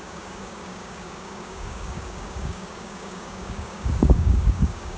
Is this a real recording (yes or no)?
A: no